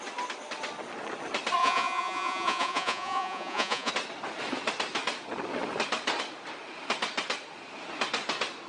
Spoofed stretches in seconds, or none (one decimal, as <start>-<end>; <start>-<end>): 1.6-3.9